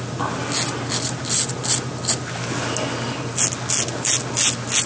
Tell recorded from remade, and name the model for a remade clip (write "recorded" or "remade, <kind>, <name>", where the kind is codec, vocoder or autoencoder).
recorded